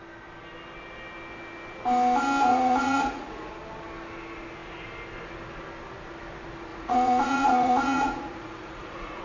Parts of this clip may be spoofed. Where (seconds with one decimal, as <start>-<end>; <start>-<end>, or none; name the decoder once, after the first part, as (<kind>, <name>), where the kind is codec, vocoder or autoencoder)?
2.5-3.5 (vocoder, Vocos); 6.7-9.2